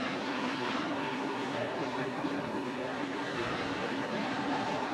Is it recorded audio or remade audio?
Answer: remade